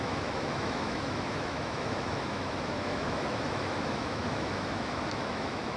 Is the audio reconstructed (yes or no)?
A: yes